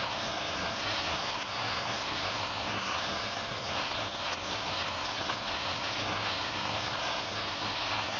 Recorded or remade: remade